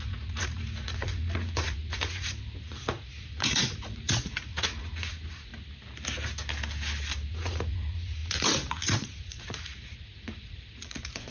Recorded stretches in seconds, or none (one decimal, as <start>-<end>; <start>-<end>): 5.5-7.3